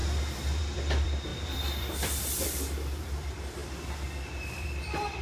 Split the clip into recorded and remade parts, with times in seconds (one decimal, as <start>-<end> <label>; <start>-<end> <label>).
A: 0.0-0.6 recorded; 0.6-3.6 remade; 3.6-4.3 recorded; 4.3-5.2 remade